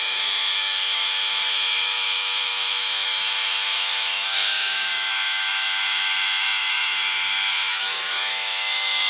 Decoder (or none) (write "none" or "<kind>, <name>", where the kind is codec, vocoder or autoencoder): autoencoder, DAC-VAE